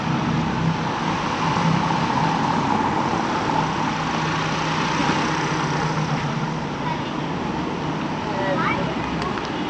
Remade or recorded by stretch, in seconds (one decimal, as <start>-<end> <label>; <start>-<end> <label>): 0.0-9.7 recorded